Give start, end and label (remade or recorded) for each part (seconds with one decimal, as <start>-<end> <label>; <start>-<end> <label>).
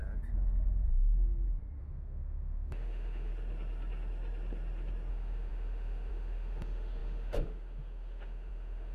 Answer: 0.0-1.8 recorded; 1.8-3.3 remade; 3.3-5.1 recorded; 5.1-8.9 remade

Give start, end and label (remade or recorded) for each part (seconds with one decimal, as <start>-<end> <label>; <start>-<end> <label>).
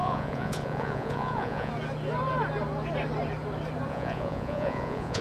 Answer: 0.0-1.7 remade; 1.7-3.9 recorded; 3.9-5.2 remade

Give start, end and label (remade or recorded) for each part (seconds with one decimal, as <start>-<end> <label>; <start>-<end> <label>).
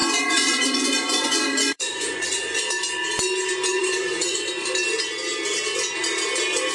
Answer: 0.0-2.6 remade; 2.6-3.8 recorded; 3.8-4.5 remade; 4.5-6.7 recorded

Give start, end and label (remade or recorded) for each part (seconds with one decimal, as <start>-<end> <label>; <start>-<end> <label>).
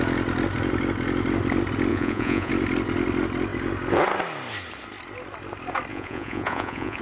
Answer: 0.0-1.9 recorded; 1.9-2.5 remade; 2.5-5.9 recorded; 5.9-7.0 remade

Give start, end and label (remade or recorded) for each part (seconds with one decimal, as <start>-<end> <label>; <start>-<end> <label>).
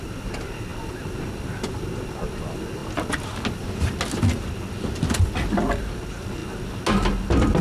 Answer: 0.0-7.6 recorded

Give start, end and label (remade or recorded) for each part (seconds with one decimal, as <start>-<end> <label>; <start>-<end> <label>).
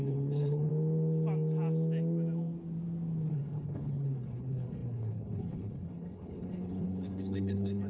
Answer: 0.0-0.7 remade; 0.7-3.3 recorded; 3.3-7.9 remade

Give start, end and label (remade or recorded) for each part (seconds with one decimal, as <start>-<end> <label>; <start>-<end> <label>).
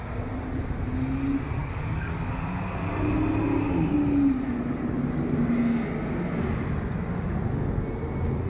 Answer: 0.0-1.6 recorded; 1.6-2.2 remade; 2.2-8.5 recorded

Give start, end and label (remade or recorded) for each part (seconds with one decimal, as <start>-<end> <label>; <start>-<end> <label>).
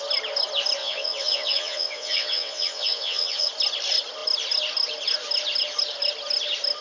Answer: 0.0-0.8 recorded; 0.8-3.5 remade; 3.5-6.8 recorded